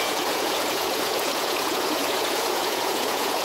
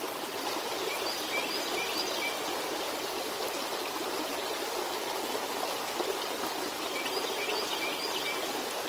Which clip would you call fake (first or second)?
first